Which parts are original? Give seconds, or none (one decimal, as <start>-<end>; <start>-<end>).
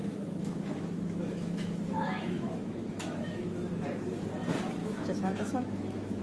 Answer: 3.7-4.8